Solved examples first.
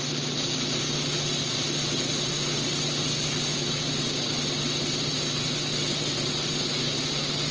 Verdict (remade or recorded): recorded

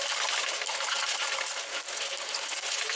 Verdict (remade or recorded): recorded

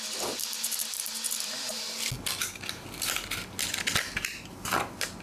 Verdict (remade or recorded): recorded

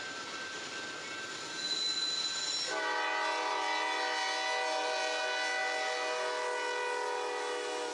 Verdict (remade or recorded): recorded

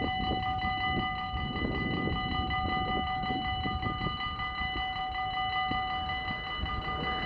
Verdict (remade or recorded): recorded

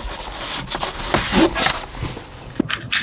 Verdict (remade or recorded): recorded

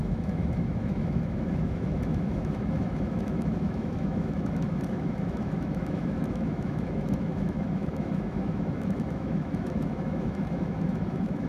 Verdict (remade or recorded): remade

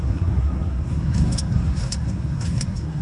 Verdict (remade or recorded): remade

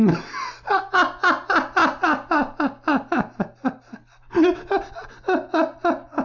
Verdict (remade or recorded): recorded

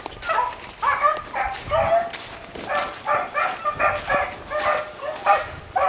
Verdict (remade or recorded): recorded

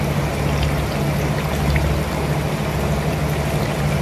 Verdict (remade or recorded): recorded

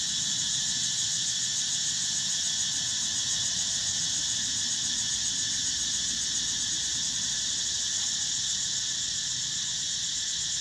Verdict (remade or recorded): recorded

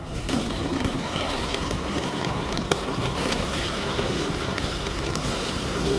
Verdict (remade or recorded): remade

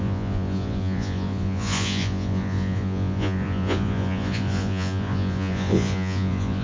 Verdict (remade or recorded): remade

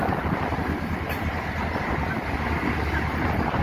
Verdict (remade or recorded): recorded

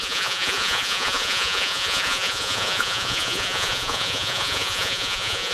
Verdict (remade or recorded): remade